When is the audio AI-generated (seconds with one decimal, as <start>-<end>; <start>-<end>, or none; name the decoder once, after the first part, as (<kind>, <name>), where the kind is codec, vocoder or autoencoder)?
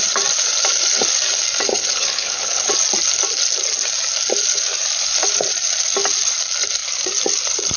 1.7-2.7 (codec, HILCodec)